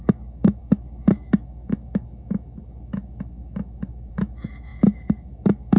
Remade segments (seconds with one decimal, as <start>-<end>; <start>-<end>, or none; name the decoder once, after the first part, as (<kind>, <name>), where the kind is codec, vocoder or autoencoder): 0.0-5.8 (autoencoder, DAC-VAE)